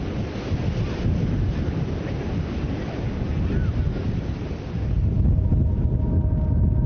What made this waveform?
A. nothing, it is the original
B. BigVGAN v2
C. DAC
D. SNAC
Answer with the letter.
A